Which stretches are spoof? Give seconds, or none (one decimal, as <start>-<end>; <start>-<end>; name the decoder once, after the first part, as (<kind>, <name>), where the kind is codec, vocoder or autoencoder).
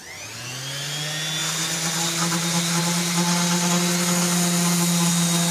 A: none